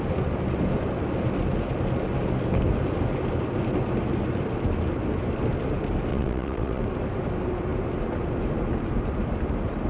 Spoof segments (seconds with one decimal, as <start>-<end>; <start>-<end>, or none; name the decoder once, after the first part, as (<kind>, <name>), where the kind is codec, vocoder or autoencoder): 6.1-6.8 (vocoder, WaveNeXt)